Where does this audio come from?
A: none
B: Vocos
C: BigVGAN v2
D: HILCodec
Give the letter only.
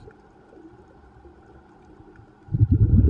A